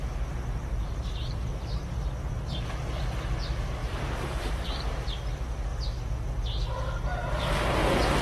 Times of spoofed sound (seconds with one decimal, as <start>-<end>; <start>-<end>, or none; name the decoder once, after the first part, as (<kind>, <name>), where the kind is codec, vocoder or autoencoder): 0.8-1.9 (vocoder, BigVGAN v2); 3.8-5.0